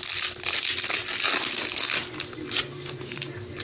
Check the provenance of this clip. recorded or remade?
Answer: recorded